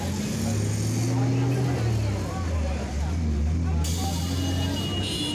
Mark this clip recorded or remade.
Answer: recorded